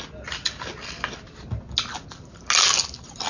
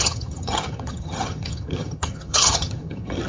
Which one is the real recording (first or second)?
first